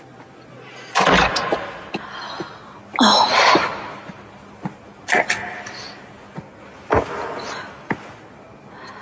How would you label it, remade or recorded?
recorded